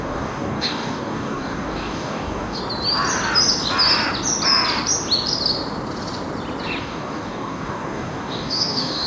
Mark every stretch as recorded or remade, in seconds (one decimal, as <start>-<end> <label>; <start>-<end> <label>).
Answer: 0.0-2.6 remade; 2.6-6.8 recorded; 6.8-9.1 remade